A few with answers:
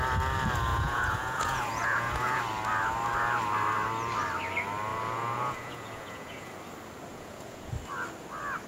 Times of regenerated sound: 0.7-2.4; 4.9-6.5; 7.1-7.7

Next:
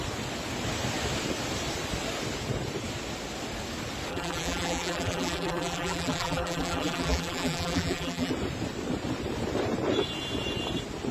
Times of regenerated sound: 4.1-8.3